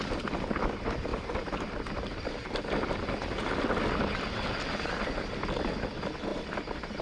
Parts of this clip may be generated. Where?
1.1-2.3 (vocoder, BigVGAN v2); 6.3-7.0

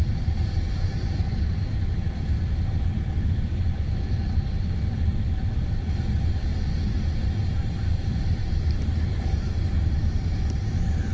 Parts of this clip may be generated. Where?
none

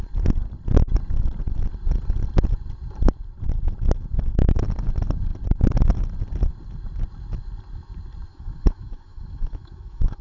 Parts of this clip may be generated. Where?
8.3-10.2 (autoencoder, DAC-VAE)

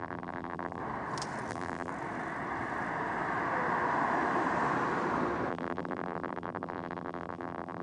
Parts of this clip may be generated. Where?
0.0-0.8 (vocoder, BigVGAN v2); 1.5-1.9; 5.5-7.8

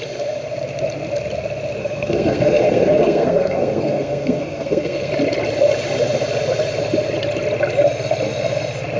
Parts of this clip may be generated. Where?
1.8-5.1 (codec, SNAC)

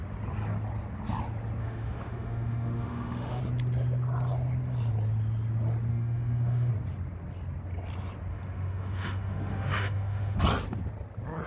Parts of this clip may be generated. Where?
1.6-3.4 (autoencoder, DAC-VAE); 5.9-6.7; 8.3-10.4